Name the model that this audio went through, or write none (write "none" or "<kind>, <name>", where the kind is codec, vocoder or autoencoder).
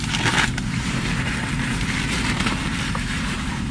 vocoder, BigVGAN v2